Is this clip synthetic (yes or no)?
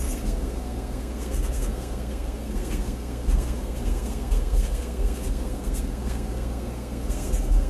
yes